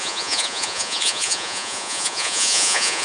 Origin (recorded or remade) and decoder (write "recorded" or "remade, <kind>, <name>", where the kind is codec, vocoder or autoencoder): remade, vocoder, Vocos